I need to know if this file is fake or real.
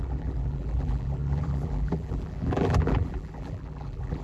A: fake